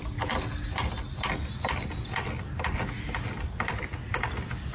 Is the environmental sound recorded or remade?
recorded